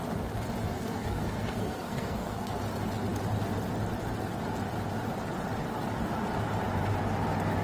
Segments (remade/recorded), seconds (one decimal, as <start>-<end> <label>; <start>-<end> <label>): 0.0-0.7 recorded; 0.7-2.6 remade; 2.6-7.6 recorded

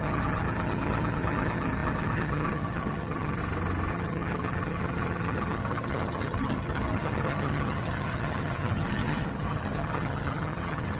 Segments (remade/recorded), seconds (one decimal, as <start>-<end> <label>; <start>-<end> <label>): 0.0-3.4 remade; 3.4-3.9 recorded; 3.9-11.0 remade

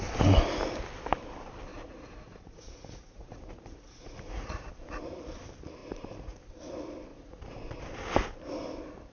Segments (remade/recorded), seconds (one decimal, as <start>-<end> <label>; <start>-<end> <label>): 0.0-1.7 recorded; 1.7-4.7 remade; 4.7-5.8 recorded; 5.8-6.5 remade; 6.5-7.1 recorded; 7.1-7.8 remade; 7.8-9.1 recorded

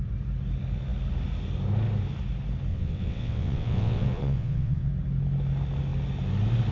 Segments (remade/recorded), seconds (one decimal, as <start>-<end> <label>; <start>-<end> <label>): 0.0-2.7 recorded; 2.7-4.9 remade; 4.9-6.7 recorded